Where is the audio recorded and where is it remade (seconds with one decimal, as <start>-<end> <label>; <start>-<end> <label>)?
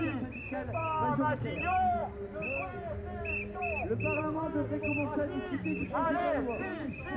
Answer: 0.0-7.2 recorded